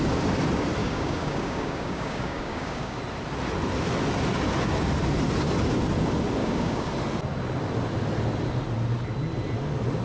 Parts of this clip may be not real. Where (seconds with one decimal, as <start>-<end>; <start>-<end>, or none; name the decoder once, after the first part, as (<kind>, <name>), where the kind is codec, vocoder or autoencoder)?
0.8-3.0 (codec, DAC); 6.4-6.9